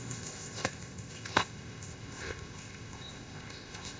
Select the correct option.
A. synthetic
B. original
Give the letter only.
A